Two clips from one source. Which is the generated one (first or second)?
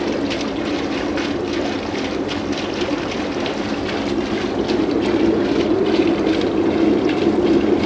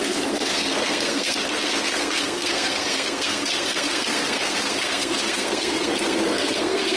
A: second